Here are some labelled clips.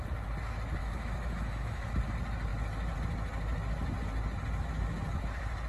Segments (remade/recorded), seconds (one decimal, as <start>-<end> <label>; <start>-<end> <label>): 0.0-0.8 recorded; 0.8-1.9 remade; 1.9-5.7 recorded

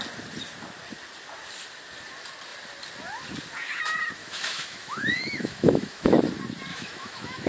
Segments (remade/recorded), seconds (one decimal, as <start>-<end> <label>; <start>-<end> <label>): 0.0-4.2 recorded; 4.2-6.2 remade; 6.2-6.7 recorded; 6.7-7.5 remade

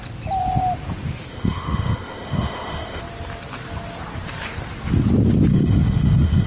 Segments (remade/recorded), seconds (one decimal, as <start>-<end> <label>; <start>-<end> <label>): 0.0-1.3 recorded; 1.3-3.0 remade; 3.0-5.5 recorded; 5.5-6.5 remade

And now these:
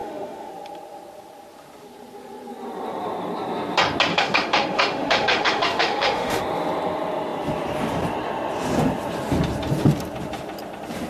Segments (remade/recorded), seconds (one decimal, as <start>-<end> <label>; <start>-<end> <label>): 0.0-0.5 remade; 0.5-4.1 recorded; 4.1-6.4 remade; 6.4-11.1 recorded

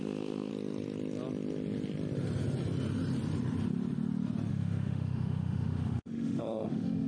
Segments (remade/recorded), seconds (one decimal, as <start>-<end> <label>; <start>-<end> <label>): 0.0-0.5 remade; 0.5-4.5 recorded; 4.5-7.1 remade

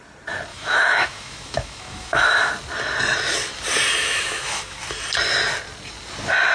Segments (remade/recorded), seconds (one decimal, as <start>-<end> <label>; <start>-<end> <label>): 0.0-0.5 recorded; 0.5-2.5 remade; 2.5-4.0 recorded; 4.0-4.8 remade; 4.8-6.5 recorded

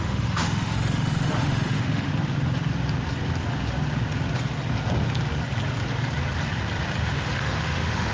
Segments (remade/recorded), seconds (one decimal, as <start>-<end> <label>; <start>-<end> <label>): 0.0-2.1 remade; 2.1-7.0 recorded; 7.0-8.1 remade

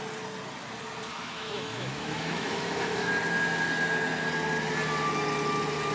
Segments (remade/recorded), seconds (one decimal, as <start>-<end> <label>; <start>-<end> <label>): 0.0-1.1 recorded; 1.1-3.1 remade; 3.1-5.9 recorded